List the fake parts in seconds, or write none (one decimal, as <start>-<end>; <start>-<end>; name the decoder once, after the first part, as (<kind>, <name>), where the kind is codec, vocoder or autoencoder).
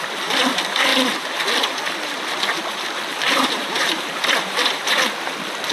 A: 3.1-5.0 (vocoder, BigVGAN v2)